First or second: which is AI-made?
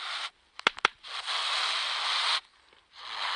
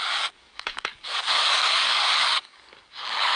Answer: second